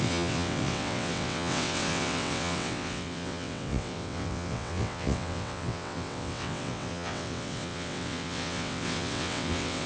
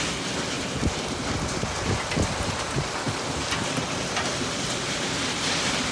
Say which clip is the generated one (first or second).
first